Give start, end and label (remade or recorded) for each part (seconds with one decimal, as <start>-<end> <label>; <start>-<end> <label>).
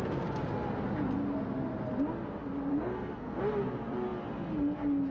0.0-2.7 recorded; 2.7-3.4 remade; 3.4-5.1 recorded